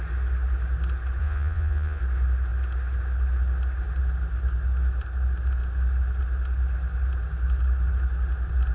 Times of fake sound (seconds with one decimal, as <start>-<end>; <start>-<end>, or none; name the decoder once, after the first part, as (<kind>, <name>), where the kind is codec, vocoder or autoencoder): 1.2-2.0 (vocoder, Vocos)